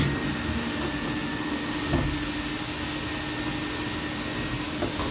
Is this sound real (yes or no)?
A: yes